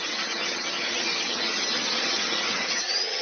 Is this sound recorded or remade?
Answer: remade